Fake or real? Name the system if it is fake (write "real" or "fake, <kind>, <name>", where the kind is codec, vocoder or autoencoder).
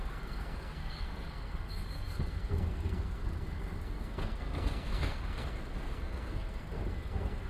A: fake, codec, SNAC